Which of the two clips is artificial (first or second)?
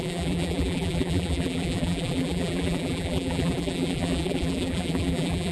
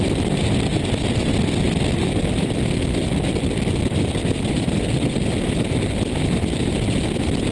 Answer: first